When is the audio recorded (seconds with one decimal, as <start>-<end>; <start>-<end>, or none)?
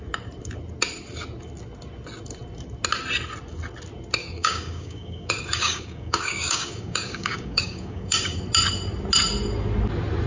0.0-4.2; 8.4-10.3